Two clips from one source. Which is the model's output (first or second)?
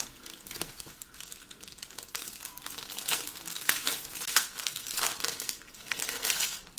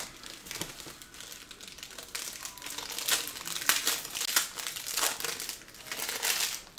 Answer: first